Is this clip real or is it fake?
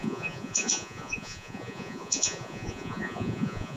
fake